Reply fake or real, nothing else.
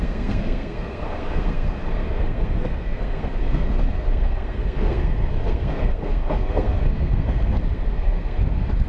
fake